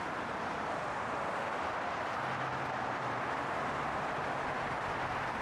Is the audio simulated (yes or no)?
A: no